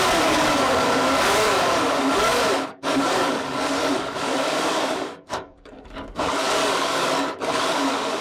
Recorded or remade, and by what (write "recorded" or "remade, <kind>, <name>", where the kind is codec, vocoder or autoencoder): remade, codec, DAC